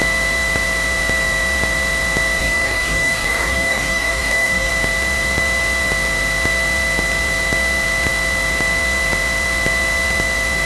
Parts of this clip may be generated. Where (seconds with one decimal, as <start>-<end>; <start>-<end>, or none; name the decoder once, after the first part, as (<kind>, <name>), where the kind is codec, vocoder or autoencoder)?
2.4-4.7 (codec, DAC)